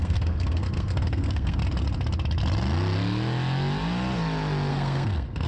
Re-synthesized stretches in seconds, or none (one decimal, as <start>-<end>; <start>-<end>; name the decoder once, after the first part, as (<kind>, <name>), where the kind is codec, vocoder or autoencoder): 0.0-1.6 (codec, SNAC); 4.7-5.5